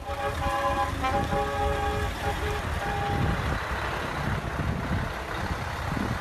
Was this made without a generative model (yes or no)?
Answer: yes